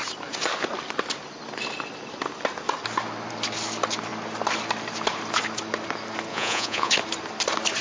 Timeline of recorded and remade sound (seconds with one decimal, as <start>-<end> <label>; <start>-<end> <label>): 0.0-6.3 recorded; 6.3-6.9 remade; 6.9-7.8 recorded

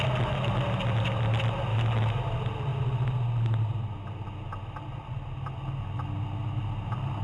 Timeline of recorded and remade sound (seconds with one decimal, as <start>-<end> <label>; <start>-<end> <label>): 0.0-1.7 recorded; 1.7-2.2 remade; 2.2-7.2 recorded